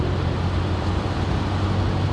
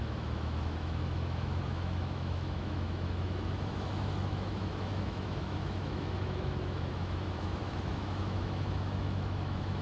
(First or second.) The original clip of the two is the first